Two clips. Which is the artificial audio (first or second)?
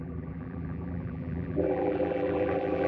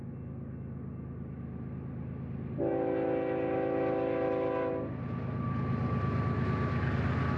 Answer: first